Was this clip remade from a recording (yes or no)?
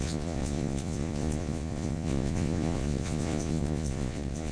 yes